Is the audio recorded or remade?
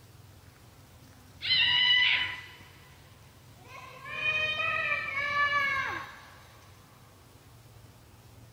recorded